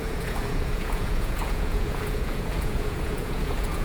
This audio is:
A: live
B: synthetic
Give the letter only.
B